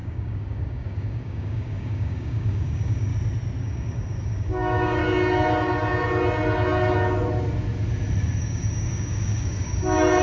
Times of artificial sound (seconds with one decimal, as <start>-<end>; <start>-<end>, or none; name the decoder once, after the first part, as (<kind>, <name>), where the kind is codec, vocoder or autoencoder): 0.0-3.1 (codec, DAC); 3.6-5.0; 8.4-10.2